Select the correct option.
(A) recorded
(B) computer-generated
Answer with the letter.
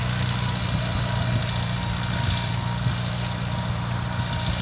A